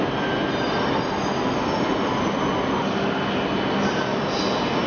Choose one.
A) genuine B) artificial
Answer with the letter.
A